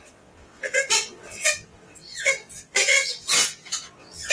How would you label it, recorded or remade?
remade